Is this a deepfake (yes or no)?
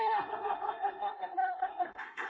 yes